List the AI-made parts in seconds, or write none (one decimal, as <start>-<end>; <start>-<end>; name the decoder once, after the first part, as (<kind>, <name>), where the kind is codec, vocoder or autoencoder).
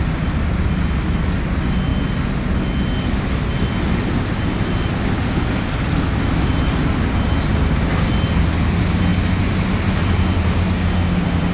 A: none